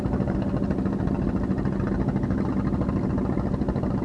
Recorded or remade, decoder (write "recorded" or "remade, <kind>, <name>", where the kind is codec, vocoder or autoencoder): recorded